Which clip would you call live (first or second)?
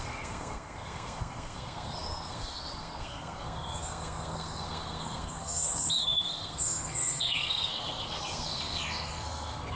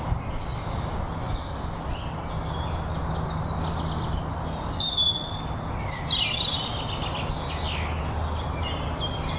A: second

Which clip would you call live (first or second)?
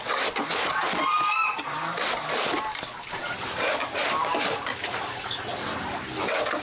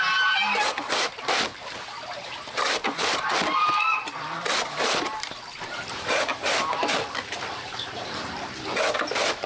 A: first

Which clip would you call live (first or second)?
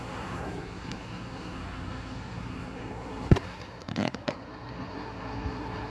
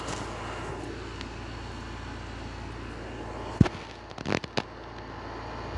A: second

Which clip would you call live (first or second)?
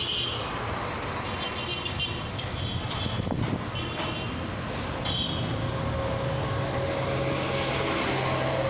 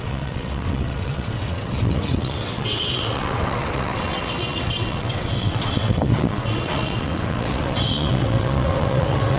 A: first